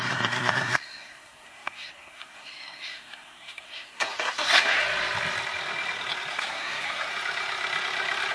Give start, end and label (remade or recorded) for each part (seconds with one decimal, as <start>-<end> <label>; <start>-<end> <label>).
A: 0.0-4.8 remade; 4.8-6.3 recorded; 6.3-7.1 remade; 7.1-8.3 recorded